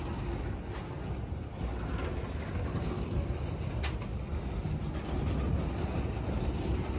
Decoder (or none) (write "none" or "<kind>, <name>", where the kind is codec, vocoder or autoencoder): none